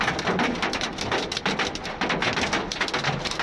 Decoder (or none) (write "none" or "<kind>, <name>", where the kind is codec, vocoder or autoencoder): none